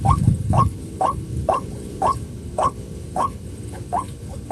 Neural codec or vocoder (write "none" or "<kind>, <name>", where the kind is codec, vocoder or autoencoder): codec, HILCodec